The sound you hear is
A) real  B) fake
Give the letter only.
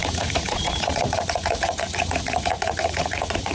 B